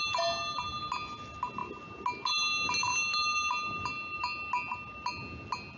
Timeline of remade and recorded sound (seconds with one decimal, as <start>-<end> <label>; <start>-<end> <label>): 0.0-5.8 recorded